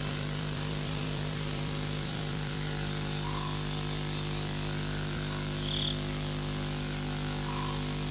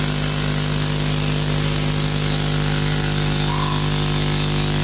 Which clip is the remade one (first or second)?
first